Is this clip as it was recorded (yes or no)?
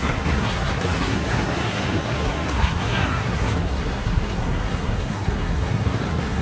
no